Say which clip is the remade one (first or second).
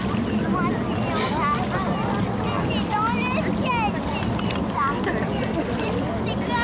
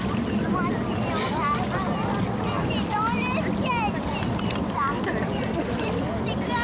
second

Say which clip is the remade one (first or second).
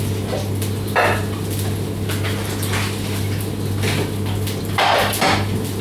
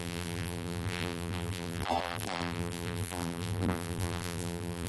second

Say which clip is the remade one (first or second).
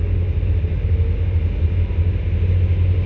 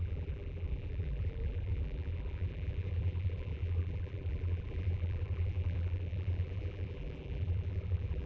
second